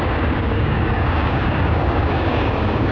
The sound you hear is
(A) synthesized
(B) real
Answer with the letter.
A